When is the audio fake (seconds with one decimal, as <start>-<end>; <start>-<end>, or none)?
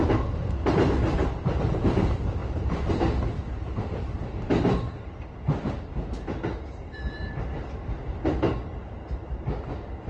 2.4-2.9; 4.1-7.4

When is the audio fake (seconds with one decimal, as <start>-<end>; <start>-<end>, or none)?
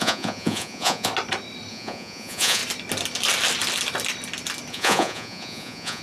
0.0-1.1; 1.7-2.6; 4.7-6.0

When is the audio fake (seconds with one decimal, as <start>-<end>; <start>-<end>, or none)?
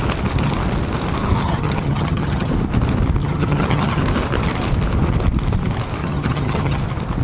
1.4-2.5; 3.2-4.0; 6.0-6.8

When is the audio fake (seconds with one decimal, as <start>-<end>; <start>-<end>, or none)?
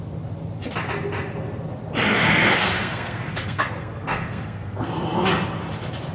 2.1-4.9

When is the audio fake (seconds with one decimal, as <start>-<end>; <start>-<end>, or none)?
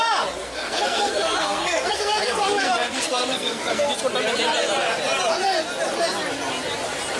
0.4-3.9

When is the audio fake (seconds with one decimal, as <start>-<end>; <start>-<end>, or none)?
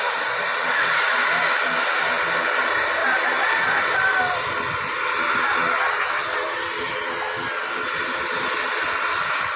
none